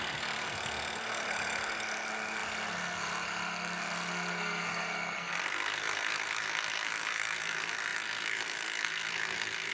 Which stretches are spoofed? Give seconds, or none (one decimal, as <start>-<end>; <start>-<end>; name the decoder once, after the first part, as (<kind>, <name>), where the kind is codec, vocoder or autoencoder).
0.0-9.7 (codec, SNAC)